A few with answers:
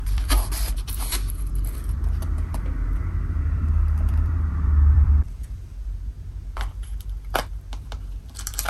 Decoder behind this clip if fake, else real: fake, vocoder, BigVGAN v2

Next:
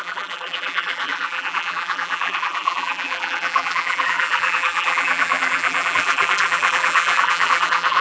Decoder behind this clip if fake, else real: fake, vocoder, BigVGAN v2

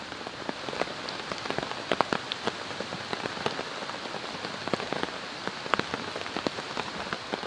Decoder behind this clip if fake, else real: real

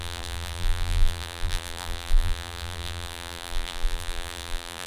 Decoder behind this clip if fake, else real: fake, vocoder, BigVGAN v2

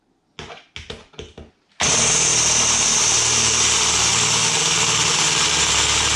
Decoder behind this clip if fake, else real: real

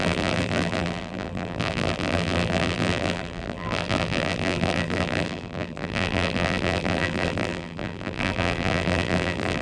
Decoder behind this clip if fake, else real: fake, vocoder, BigVGAN v2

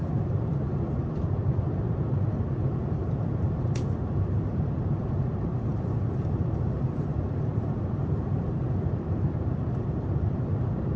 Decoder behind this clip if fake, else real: fake, vocoder, BigVGAN v2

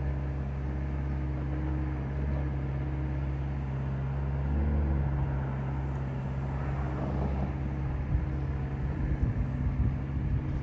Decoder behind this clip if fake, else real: real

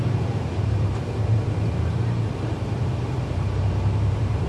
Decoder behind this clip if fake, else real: fake, vocoder, BigVGAN v2